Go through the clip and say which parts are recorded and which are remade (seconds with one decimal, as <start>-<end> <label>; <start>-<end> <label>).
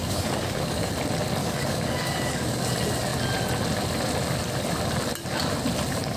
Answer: 0.0-0.9 remade; 0.9-1.4 recorded; 1.4-2.6 remade; 2.6-6.2 recorded